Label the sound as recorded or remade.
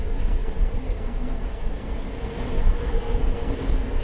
remade